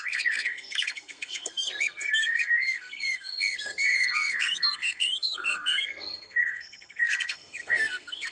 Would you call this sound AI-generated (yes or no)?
yes